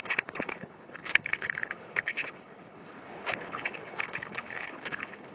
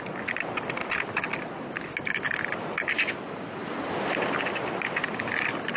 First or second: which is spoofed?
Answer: first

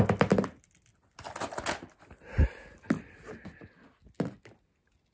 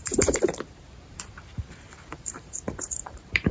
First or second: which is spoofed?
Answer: second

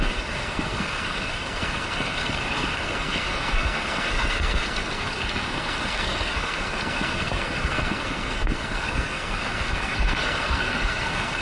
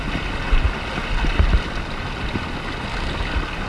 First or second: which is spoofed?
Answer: first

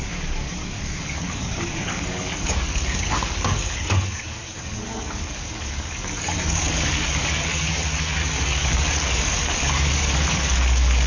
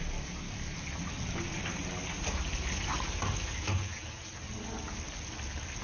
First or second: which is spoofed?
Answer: first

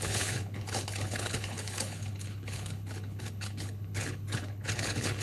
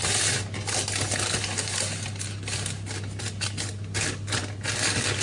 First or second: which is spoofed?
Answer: first